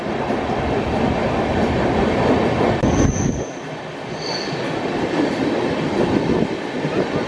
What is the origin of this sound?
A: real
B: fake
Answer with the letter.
A